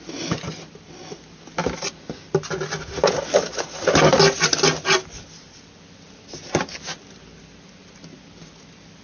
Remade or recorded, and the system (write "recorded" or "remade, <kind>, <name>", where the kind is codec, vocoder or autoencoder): recorded